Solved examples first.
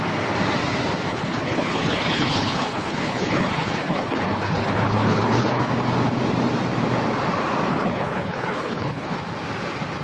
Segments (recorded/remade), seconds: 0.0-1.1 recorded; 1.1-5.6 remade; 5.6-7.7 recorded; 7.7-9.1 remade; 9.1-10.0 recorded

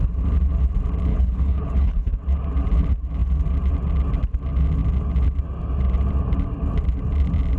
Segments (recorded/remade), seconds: 0.0-1.1 recorded; 1.1-2.1 remade; 2.1-7.6 recorded

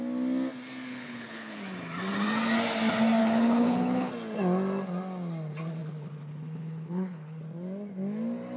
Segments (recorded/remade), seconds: 0.0-0.9 recorded; 0.9-1.6 remade; 1.6-3.2 recorded; 3.2-4.1 remade; 4.1-5.8 recorded; 5.8-7.4 remade; 7.4-8.6 recorded

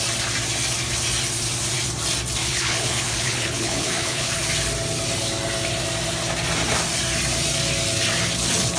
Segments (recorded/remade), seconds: 0.0-2.4 recorded; 2.4-4.3 remade; 4.3-8.8 recorded

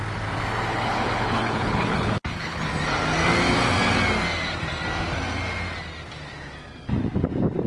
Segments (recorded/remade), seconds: 0.0-0.7 recorded; 0.7-2.6 remade; 2.6-7.7 recorded

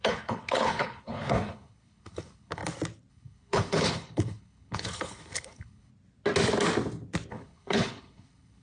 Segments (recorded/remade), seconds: 0.0-2.6 remade; 2.6-3.1 recorded; 3.1-5.9 remade; 5.9-7.3 recorded; 7.3-8.6 remade